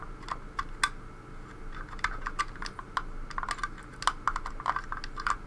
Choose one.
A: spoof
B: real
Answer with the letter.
B